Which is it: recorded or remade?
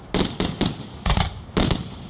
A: recorded